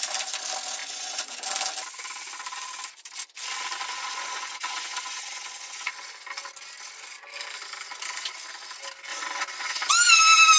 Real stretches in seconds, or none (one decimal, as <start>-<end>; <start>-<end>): 0.0-0.8; 1.3-3.9; 5.9-9.1; 9.9-10.6